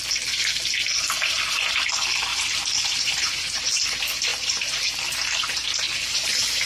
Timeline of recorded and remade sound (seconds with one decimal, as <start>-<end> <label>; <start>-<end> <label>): 0.0-2.3 recorded; 2.3-3.9 remade; 3.9-4.3 recorded; 4.3-4.9 remade; 4.9-6.7 recorded